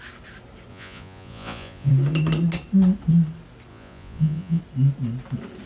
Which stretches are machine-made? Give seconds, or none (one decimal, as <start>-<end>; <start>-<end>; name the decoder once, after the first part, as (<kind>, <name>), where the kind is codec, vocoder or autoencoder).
0.7-1.9 (vocoder, Vocos); 3.7-4.6

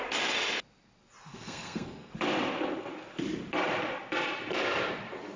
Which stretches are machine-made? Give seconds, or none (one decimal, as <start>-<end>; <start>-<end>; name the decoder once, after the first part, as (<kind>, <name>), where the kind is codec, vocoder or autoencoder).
1.3-2.1 (codec, SNAC)

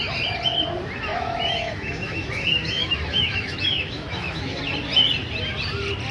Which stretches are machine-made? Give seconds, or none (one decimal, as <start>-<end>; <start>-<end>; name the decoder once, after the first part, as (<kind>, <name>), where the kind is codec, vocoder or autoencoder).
1.1-4.6 (autoencoder, DAC-VAE)

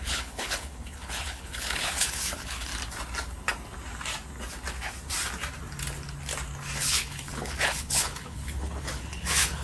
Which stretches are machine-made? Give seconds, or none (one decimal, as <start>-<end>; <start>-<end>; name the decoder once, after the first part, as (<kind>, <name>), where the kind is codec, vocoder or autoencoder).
0.0-2.7 (codec, HILCodec); 6.8-9.6

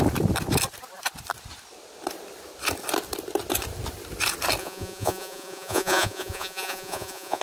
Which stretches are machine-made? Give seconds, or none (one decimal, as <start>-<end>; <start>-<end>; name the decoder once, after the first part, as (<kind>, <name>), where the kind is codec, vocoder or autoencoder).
4.6-7.4 (vocoder, Vocos)

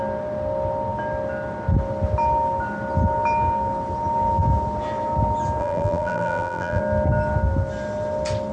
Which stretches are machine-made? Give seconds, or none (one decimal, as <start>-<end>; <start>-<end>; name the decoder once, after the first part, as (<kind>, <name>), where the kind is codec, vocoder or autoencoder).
5.6-6.8 (vocoder, BigVGAN v2)

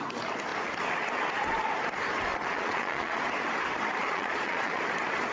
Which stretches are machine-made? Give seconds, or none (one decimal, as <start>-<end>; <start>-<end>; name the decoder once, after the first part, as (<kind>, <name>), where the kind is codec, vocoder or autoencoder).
2.3-3.2 (vocoder, Vocos); 4.0-4.8